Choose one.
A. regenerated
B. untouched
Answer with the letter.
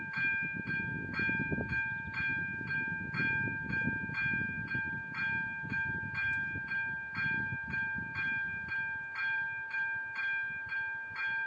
B